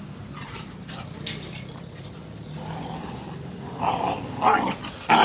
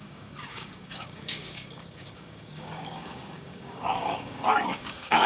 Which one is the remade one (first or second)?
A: second